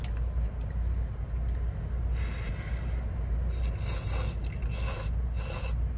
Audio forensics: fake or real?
real